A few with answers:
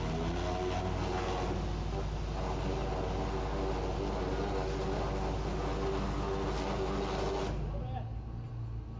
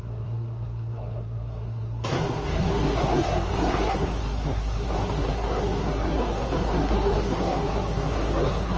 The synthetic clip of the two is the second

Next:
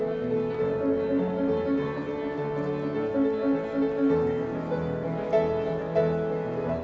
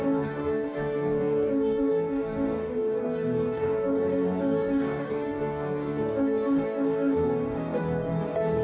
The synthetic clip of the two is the second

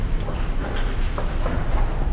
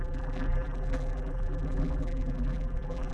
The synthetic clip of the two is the second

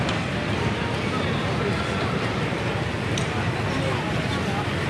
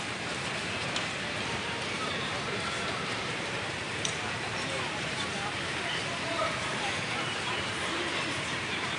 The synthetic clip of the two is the second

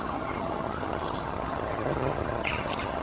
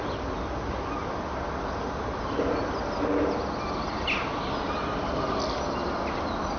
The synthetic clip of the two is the first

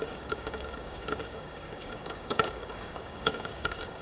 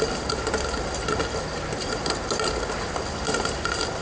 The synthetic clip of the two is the first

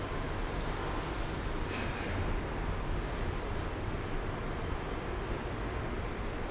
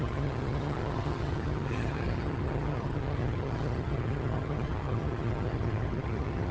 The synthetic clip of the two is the second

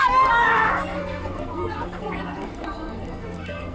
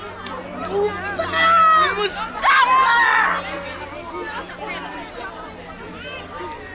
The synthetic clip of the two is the first